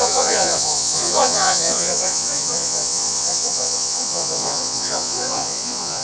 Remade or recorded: remade